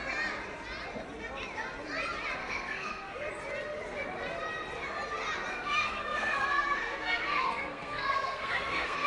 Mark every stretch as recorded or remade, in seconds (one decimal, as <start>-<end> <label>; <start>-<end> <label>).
0.0-2.4 recorded; 2.4-3.3 remade; 3.3-5.5 recorded; 5.5-9.1 remade